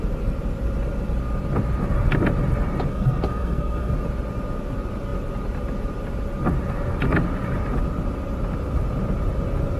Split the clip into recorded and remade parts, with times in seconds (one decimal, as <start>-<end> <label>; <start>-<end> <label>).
0.0-2.9 recorded; 2.9-3.9 remade; 3.9-9.8 recorded